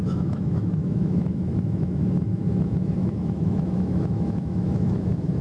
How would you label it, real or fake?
fake